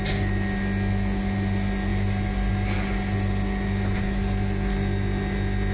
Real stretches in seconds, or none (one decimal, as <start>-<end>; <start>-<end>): 0.0-5.7